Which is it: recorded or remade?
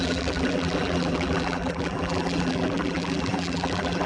remade